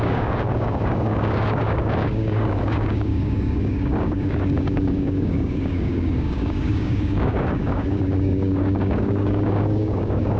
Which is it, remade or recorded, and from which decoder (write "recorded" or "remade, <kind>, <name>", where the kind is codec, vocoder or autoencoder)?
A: remade, codec, DAC